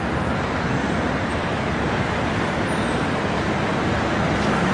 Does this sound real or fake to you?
real